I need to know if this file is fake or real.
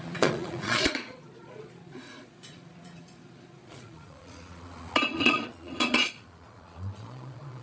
fake